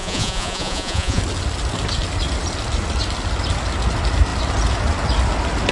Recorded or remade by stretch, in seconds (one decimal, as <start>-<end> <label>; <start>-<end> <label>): 0.0-1.2 remade; 1.2-5.7 recorded